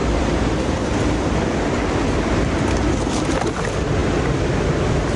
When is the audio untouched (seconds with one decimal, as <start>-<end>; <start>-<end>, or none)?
1.9-5.2